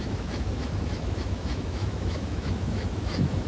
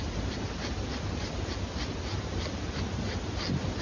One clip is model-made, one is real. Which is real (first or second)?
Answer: second